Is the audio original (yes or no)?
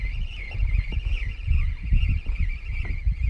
yes